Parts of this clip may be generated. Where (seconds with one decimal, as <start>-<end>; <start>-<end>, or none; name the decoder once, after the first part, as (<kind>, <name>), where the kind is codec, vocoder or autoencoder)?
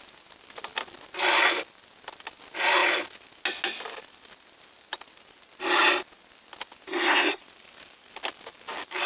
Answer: 6.9-7.4 (codec, SNAC)